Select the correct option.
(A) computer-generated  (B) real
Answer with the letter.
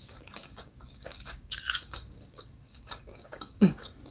A